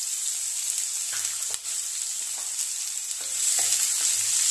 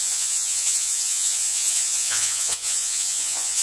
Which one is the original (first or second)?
first